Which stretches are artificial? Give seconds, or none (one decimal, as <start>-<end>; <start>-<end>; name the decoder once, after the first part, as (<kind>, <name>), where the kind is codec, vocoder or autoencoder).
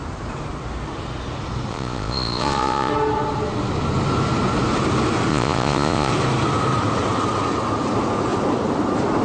1.7-2.9 (vocoder, Vocos); 5.3-6.1